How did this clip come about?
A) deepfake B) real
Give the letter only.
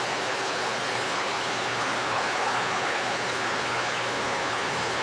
A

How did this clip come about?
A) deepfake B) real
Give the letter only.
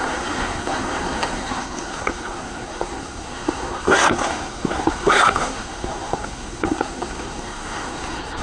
A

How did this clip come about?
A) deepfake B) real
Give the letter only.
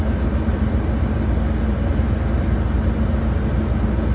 B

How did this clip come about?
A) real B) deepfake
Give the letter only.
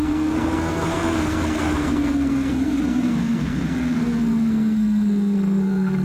B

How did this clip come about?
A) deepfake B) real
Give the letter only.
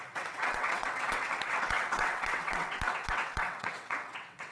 A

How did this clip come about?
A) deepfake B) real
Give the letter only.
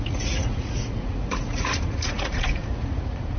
A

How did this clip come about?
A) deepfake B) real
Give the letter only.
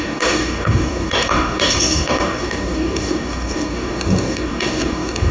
A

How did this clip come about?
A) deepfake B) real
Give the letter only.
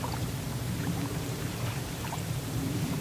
A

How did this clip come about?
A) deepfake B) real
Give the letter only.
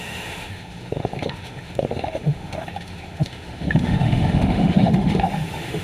A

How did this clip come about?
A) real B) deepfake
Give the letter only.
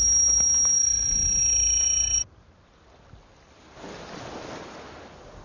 A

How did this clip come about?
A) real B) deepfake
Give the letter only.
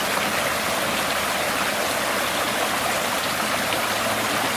A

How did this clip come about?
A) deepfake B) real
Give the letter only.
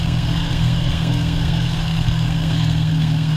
A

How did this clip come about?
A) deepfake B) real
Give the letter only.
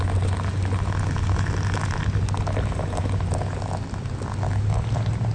B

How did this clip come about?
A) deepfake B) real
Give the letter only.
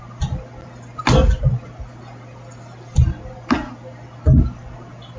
B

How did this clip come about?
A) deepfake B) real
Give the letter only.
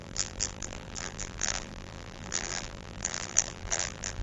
A